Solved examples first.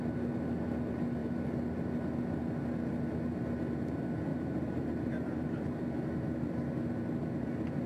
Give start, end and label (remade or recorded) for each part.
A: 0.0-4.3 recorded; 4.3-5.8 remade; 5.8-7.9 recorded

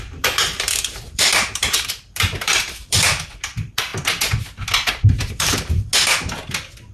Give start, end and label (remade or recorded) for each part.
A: 0.0-3.9 remade; 3.9-5.3 recorded; 5.3-5.9 remade; 5.9-6.9 recorded

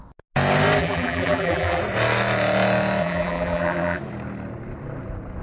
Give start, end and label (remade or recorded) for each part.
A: 0.0-0.8 recorded; 0.8-1.8 remade; 1.8-3.0 recorded; 3.0-4.0 remade; 4.0-5.4 recorded

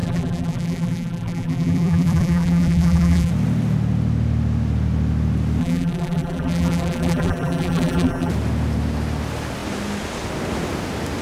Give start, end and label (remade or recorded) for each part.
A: 0.0-3.3 remade; 3.3-5.6 recorded; 5.6-8.3 remade; 8.3-11.2 recorded